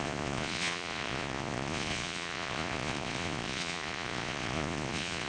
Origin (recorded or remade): remade